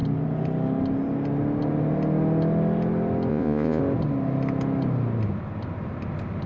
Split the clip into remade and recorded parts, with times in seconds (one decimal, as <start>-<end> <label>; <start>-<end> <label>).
0.0-3.3 recorded; 3.3-3.8 remade; 3.8-6.5 recorded

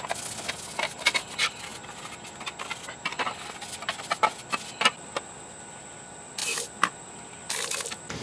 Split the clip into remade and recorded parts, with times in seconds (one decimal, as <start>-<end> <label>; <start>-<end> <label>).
0.0-8.2 recorded

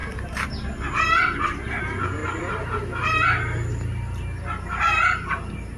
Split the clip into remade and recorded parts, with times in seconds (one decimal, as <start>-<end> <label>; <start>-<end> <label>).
0.0-1.8 recorded; 1.8-2.2 remade; 2.2-5.8 recorded